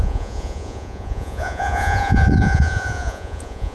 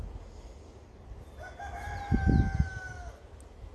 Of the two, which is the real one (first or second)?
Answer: second